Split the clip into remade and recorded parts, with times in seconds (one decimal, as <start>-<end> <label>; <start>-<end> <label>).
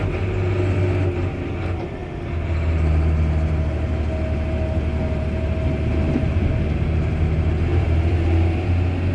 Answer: 0.0-7.7 recorded; 7.7-8.7 remade; 8.7-9.1 recorded